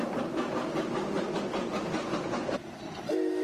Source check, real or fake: real